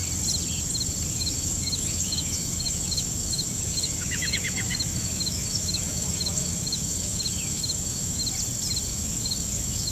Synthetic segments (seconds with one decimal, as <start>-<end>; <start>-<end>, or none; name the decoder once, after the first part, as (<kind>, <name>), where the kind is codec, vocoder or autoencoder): 1.1-8.2 (autoencoder, DAC-VAE); 8.9-9.9